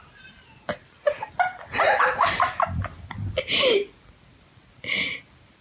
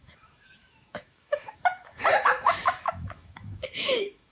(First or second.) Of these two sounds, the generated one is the second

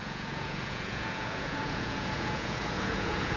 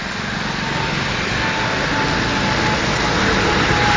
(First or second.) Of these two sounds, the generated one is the first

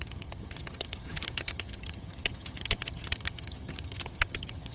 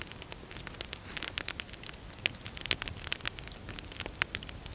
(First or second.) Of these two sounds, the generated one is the first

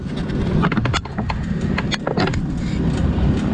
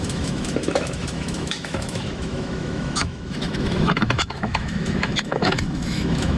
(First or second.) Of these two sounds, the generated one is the second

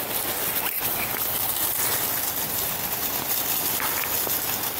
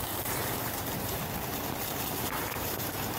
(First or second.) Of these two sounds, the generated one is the second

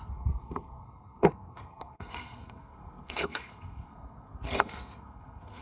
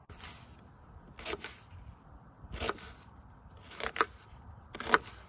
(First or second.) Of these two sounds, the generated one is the first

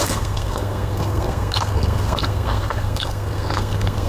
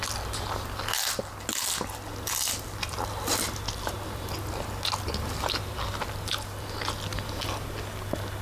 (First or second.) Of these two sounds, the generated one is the first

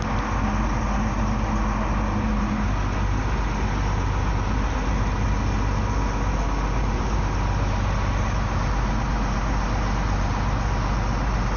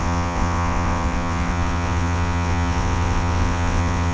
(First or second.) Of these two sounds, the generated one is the second